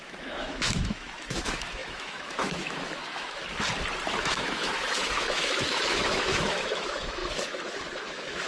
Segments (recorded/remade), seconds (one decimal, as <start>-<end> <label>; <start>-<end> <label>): 0.0-3.4 remade; 3.4-4.2 recorded; 4.2-8.5 remade